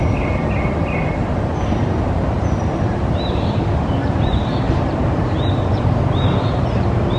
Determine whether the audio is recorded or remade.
remade